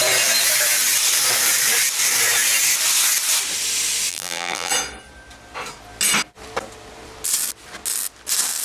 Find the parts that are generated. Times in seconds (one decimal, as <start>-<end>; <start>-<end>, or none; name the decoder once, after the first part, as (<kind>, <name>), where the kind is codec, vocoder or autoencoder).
4.1-4.7 (vocoder, BigVGAN v2)